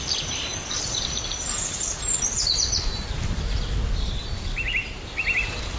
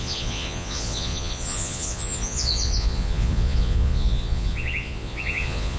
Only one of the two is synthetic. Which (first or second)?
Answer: second